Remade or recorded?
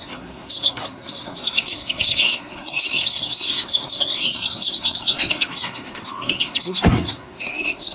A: remade